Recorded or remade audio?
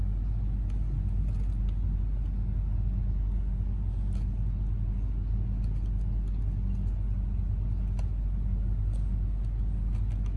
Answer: recorded